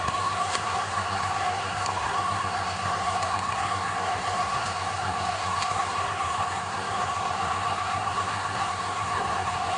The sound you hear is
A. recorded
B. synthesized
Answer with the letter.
B